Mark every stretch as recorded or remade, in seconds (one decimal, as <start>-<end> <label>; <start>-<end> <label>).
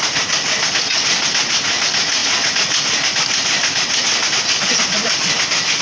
0.0-5.8 recorded